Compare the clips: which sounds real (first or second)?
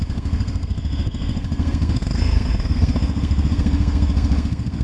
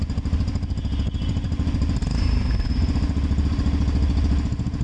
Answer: second